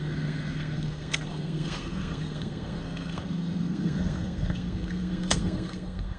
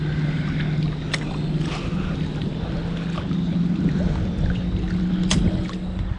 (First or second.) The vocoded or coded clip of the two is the first